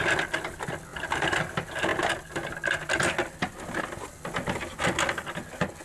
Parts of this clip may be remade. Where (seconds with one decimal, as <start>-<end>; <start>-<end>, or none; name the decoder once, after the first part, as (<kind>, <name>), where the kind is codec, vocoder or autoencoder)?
0.9-1.4 (vocoder, BigVGAN v2)